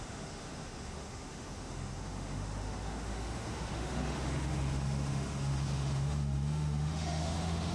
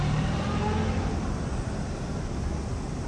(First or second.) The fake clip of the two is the first